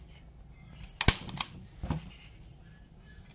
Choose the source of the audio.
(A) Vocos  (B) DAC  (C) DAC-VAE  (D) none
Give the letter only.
D